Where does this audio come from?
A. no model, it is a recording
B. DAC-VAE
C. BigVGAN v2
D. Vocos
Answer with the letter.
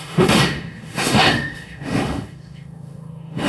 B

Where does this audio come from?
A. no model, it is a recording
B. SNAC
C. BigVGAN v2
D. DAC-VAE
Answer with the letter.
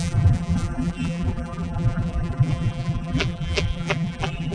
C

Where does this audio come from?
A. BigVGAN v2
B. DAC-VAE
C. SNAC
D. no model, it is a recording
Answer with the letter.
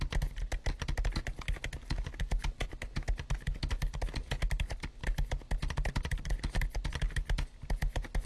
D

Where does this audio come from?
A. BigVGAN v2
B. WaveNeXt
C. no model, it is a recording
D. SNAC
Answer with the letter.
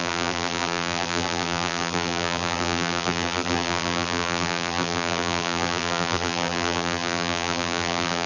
A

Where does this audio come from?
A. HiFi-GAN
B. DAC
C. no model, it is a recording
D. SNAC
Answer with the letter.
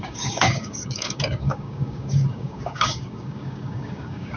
B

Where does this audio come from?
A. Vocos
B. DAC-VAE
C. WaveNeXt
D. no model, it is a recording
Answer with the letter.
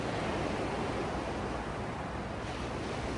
D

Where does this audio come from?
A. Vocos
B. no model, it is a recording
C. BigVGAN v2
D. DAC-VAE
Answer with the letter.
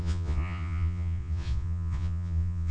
A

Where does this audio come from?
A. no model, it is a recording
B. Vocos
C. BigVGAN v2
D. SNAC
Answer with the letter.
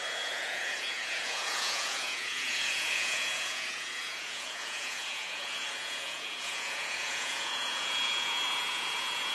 B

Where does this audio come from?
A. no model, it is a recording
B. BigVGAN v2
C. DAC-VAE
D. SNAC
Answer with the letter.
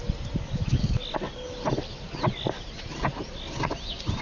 A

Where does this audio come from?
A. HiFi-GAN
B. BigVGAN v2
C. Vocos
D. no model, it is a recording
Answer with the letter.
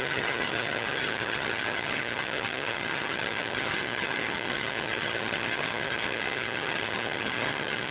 A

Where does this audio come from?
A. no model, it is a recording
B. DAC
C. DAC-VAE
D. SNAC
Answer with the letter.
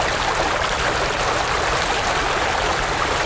A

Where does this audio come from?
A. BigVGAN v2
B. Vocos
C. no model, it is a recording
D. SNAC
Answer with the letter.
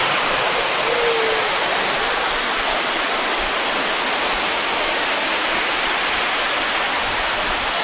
C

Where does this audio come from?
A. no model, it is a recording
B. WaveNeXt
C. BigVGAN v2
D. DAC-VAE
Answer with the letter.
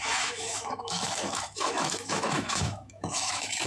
D